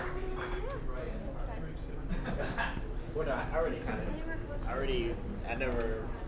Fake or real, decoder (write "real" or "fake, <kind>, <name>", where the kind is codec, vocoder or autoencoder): real